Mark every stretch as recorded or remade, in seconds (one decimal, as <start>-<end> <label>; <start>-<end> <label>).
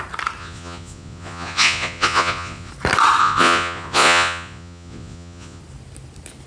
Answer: 0.0-0.4 recorded; 0.4-2.7 remade; 2.7-3.2 recorded; 3.2-5.6 remade; 5.6-6.5 recorded